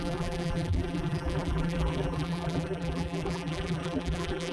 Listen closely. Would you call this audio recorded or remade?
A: remade